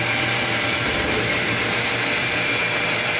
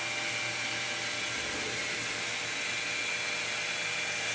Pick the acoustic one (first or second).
second